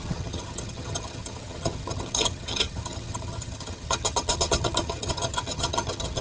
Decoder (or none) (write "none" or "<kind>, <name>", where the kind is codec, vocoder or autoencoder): vocoder, HiFi-GAN